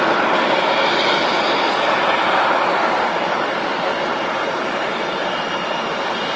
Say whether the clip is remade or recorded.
recorded